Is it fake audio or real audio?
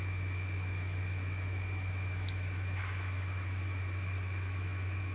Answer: fake